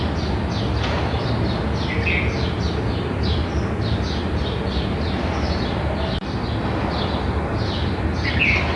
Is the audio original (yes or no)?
yes